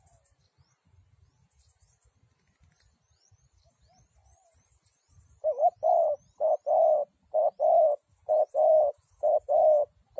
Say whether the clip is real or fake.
real